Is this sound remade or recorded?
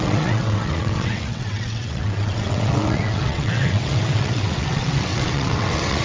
remade